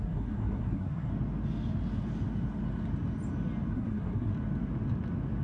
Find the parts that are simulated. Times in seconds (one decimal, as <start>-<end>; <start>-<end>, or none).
0.0-1.1; 3.7-4.3